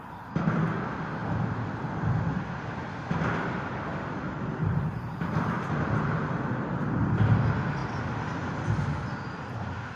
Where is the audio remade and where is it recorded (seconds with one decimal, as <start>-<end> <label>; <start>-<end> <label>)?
0.0-1.2 recorded; 1.2-2.4 remade; 2.4-3.9 recorded; 3.9-7.2 remade; 7.2-10.0 recorded